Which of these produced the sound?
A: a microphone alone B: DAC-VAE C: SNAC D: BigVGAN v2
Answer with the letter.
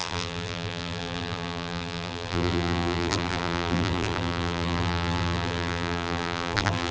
D